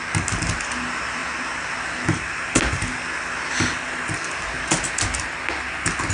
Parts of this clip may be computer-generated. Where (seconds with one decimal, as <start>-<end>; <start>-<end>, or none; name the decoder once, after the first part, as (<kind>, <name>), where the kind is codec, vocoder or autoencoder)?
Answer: none